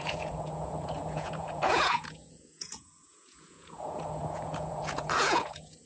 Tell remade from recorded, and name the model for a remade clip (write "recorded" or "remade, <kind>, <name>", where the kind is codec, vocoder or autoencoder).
remade, vocoder, Vocos